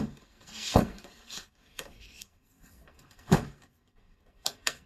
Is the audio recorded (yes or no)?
no